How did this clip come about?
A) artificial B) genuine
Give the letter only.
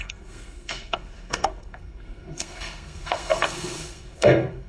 A